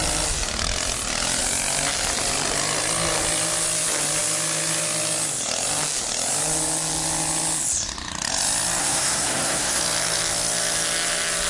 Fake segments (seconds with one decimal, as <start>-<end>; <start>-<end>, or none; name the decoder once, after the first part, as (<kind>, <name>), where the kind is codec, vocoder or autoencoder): 8.8-9.8 (codec, SNAC)